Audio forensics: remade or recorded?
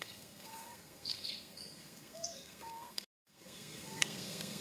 remade